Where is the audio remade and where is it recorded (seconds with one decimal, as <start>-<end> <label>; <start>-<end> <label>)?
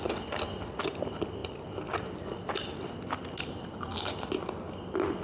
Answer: 0.0-5.2 recorded